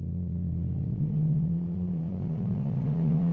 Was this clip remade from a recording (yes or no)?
yes